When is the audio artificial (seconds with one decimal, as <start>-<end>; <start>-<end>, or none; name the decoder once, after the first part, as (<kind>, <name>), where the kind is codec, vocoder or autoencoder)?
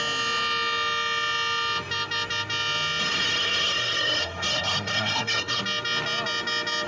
3.0-5.6 (codec, SNAC)